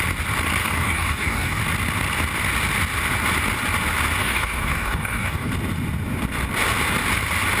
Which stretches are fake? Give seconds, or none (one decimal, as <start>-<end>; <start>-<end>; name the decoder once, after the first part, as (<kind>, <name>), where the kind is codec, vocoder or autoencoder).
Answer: 0.6-1.6 (codec, DAC); 4.2-5.5